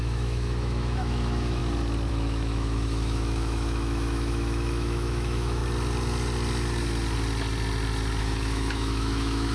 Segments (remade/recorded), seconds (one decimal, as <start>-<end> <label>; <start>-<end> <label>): 0.0-1.6 remade; 1.6-2.1 recorded; 2.1-5.6 remade; 5.6-8.2 recorded; 8.2-9.5 remade